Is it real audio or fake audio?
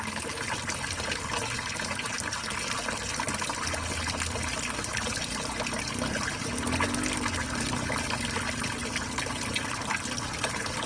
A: real